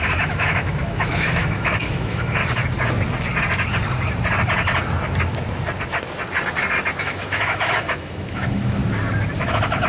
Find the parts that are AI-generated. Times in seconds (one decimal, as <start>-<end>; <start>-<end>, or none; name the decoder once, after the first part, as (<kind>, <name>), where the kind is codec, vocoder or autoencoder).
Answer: 0.0-2.4 (autoencoder, DAC-VAE); 7.0-8.8; 9.4-9.9